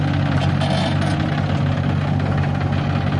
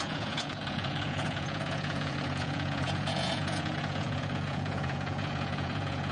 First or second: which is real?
first